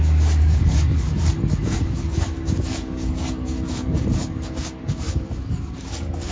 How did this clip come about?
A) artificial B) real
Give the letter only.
A